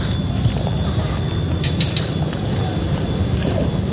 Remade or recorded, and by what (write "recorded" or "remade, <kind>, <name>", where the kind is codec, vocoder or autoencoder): recorded